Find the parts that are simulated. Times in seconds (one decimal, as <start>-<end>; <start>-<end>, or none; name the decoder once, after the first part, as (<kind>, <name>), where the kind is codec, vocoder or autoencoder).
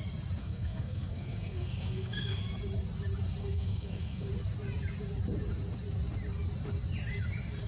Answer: 0.4-2.4 (codec, SNAC); 3.4-4.3